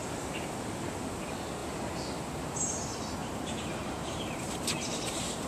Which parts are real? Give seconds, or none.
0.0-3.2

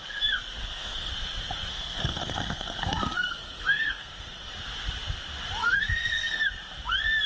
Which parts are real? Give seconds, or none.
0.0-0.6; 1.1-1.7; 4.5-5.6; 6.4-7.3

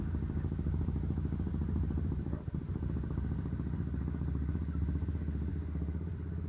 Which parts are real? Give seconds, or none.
0.0-5.5

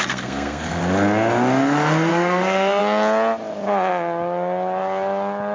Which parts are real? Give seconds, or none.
0.8-2.1; 2.8-5.5

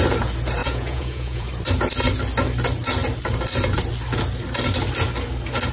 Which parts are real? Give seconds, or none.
0.0-0.6; 1.5-5.7

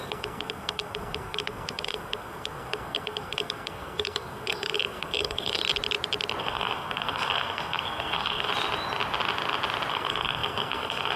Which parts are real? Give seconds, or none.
5.6-6.4; 8.5-9.9

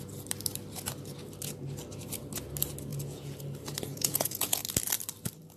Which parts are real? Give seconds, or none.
0.0-2.9; 3.4-3.9; 4.6-5.6

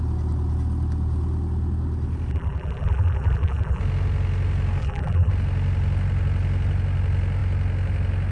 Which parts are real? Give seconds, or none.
0.0-2.3; 3.8-4.8; 5.3-8.3